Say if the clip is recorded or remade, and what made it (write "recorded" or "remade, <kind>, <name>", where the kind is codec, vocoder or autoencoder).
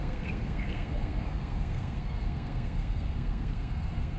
remade, codec, SNAC